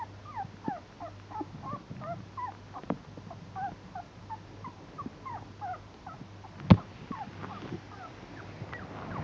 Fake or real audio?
real